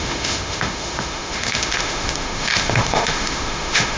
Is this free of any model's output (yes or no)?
no